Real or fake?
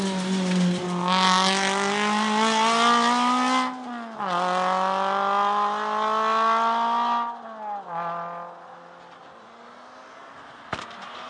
real